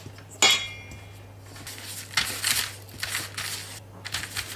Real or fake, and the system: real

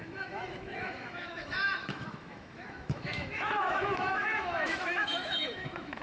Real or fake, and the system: fake, autoencoder, DAC-VAE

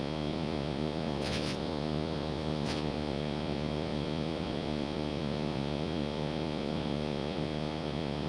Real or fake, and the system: fake, vocoder, Vocos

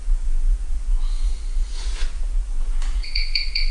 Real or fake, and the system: fake, vocoder, Vocos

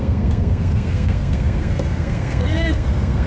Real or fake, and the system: fake, codec, SNAC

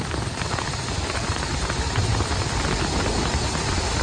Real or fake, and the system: real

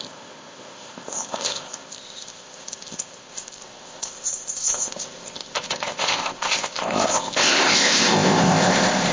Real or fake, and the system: fake, codec, ZipCodec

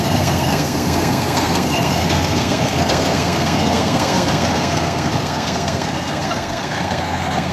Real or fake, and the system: fake, codec, SNAC